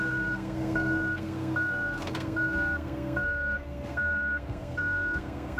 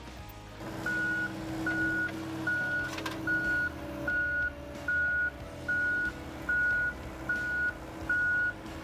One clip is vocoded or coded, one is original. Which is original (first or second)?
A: second